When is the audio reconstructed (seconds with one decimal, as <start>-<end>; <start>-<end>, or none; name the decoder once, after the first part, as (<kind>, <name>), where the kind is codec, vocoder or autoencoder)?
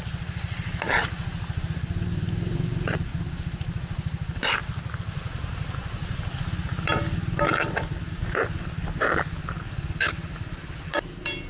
none